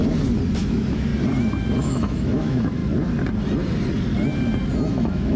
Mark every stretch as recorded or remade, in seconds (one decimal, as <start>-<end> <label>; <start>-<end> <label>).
0.0-0.5 recorded; 0.5-1.1 remade; 1.1-1.8 recorded; 1.8-2.8 remade; 2.8-4.9 recorded; 4.9-5.4 remade